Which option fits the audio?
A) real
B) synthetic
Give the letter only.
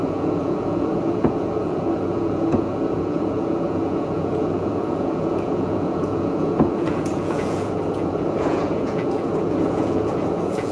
B